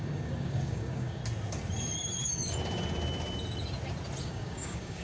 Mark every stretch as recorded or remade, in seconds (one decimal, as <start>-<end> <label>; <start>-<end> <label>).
0.0-1.2 remade; 1.2-4.2 recorded; 4.2-5.0 remade